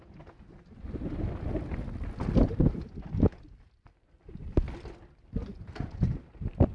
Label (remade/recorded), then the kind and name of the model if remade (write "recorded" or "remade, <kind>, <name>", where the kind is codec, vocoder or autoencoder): recorded